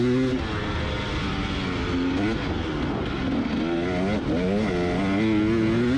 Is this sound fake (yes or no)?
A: no